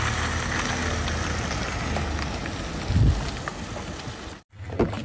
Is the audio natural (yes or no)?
yes